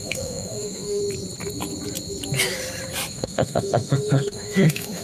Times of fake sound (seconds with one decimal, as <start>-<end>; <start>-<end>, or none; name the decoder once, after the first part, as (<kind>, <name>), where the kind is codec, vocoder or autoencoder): 0.0-1.0 (autoencoder, DAC-VAE); 3.1-5.0